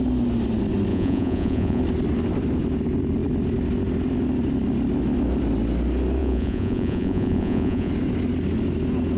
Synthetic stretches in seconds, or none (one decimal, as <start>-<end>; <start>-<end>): 0.9-1.8; 6.2-7.9